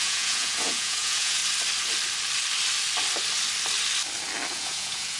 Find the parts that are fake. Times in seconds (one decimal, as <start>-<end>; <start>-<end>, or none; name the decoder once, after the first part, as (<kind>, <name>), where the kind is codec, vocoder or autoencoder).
0.0-1.4 (vocoder, Vocos); 4.5-5.2